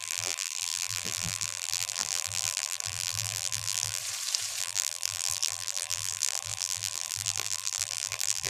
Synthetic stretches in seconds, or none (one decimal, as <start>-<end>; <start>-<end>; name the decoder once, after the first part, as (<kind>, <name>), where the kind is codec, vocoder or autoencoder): 0.0-4.0 (vocoder, BigVGAN v2); 4.6-8.5